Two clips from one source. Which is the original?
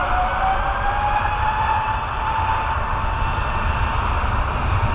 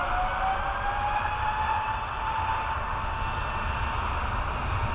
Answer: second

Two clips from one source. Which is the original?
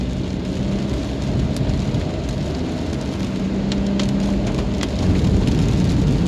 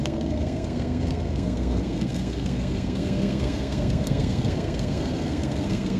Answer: first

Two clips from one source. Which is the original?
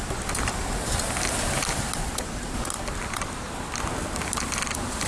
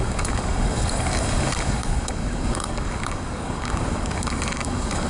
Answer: first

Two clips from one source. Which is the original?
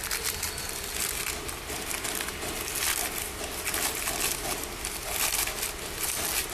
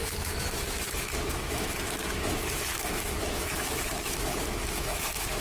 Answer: first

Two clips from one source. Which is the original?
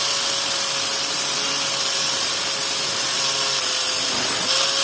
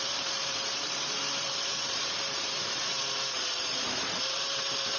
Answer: first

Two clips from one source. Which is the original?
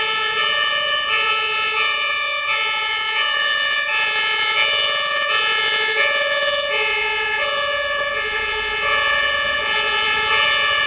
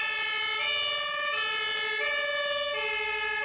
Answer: second